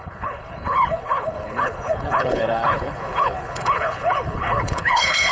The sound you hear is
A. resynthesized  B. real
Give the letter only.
A